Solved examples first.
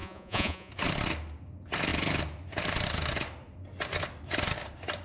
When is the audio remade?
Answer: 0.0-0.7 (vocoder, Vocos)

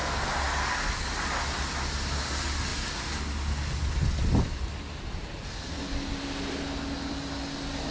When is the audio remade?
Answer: none

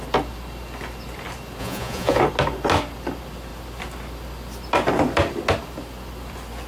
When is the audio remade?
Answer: 1.6-2.2 (vocoder, Vocos)

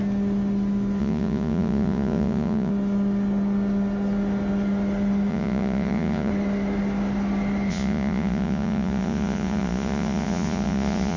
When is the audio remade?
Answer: 1.0-2.7 (vocoder, Vocos); 5.3-6.3; 7.7-11.2

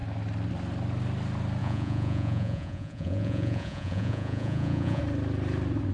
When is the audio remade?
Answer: 1.6-5.0 (vocoder, Vocos)

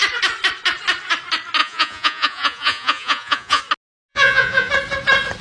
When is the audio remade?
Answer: 1.6-3.6 (vocoder, Vocos); 4.1-4.7

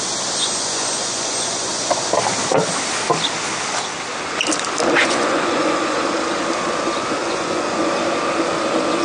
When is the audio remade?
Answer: 0.4-2.1 (vocoder, Vocos); 5.0-6.0; 7.2-7.9